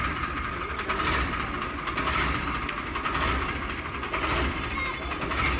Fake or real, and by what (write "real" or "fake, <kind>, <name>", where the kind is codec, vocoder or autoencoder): real